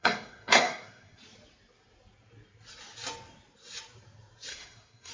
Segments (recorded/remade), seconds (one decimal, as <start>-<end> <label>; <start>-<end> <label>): 0.0-1.2 remade; 1.2-4.5 recorded; 4.5-5.1 remade